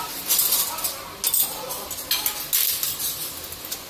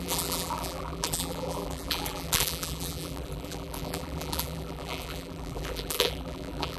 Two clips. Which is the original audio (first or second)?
first